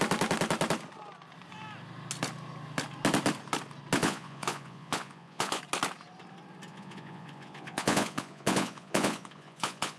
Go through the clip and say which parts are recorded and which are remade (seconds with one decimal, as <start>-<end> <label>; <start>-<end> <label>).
0.0-4.0 recorded; 4.0-5.6 remade; 5.6-6.7 recorded; 6.7-10.0 remade